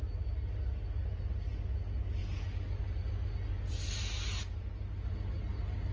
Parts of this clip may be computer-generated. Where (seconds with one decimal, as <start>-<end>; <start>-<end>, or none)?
none